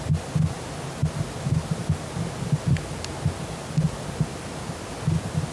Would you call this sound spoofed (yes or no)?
no